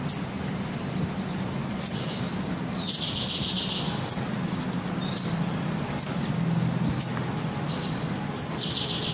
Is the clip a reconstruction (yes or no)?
no